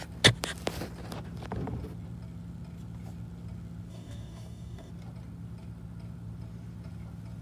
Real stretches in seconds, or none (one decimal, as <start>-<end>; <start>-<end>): 0.0-3.9; 4.9-7.4